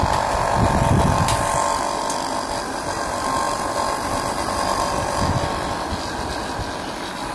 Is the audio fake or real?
real